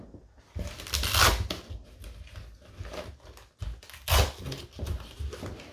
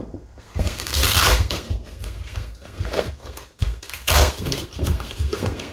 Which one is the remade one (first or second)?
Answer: second